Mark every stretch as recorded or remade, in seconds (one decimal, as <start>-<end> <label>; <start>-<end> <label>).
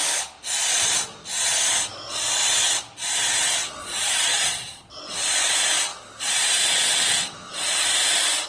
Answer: 0.0-3.8 recorded; 3.8-5.0 remade; 5.0-8.5 recorded